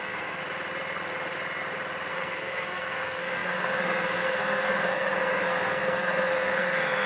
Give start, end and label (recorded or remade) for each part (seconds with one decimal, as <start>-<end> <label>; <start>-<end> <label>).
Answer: 0.0-0.4 remade; 0.4-2.1 recorded; 2.1-7.1 remade